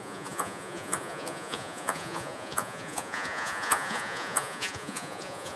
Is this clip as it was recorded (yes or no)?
no